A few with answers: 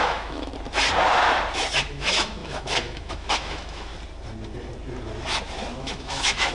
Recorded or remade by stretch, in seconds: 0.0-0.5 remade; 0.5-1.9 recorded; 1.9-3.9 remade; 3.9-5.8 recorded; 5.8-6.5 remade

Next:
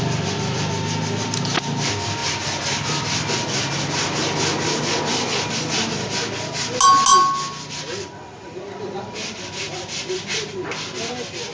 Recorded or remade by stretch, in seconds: 0.0-11.5 recorded

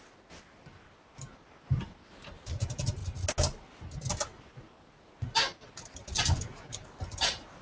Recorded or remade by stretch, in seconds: 0.0-7.6 recorded

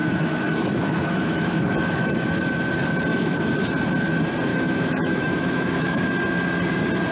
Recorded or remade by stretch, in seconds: 0.0-2.5 remade; 2.5-3.1 recorded; 3.1-3.6 remade; 3.6-4.5 recorded; 4.5-6.1 remade; 6.1-7.1 recorded